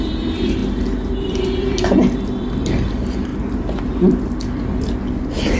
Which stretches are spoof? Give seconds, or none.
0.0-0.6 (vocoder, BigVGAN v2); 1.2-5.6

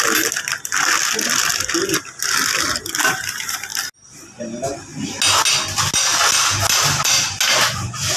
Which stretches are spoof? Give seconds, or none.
none

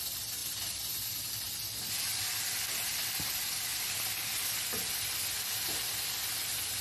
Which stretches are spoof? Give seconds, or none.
0.4-1.9 (vocoder, BigVGAN v2)

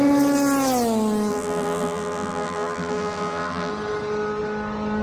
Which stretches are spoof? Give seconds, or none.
1.3-3.7 (vocoder, BigVGAN v2)

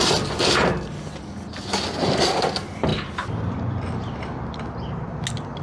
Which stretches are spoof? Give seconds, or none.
2.9-3.9 (vocoder, BigVGAN v2)